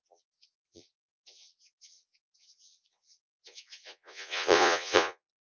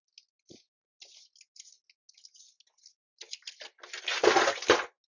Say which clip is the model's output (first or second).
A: first